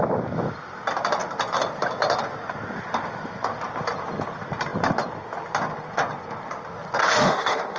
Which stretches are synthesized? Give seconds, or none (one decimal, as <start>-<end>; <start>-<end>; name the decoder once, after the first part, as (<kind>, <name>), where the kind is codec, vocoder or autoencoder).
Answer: 7.0-7.8 (autoencoder, DAC-VAE)